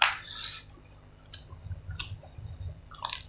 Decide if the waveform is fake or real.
fake